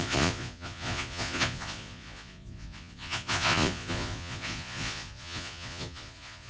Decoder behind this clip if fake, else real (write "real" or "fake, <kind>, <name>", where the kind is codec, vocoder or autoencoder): fake, vocoder, Vocos